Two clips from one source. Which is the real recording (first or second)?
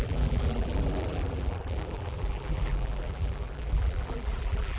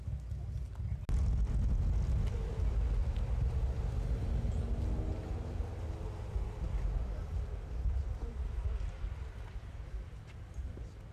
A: second